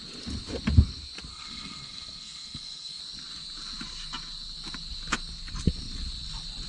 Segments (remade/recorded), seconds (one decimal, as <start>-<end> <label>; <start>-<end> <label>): 0.0-1.3 recorded; 1.3-3.0 remade; 3.0-6.7 recorded

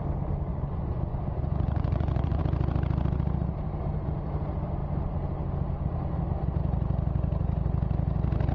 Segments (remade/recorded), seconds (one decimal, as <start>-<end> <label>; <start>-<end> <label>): 0.0-0.5 recorded; 0.5-2.4 remade; 2.4-8.5 recorded

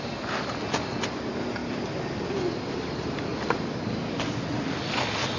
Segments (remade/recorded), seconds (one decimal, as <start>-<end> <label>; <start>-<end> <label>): 0.0-5.4 recorded

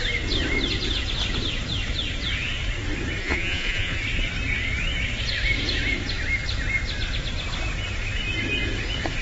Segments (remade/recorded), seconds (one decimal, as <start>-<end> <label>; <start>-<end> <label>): 0.0-3.2 recorded; 3.2-4.0 remade; 4.0-9.2 recorded

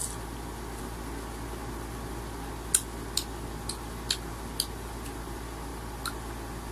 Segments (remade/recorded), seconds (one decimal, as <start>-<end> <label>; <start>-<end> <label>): 0.0-6.7 recorded

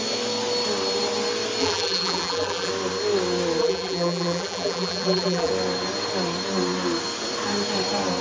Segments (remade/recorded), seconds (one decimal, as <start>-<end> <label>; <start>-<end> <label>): 0.0-1.6 recorded; 1.6-2.7 remade; 2.7-3.6 recorded; 3.6-5.5 remade; 5.5-8.2 recorded

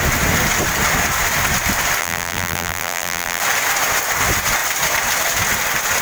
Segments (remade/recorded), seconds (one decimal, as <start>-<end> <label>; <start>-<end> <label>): 0.0-2.0 recorded; 2.0-3.4 remade; 3.4-6.0 recorded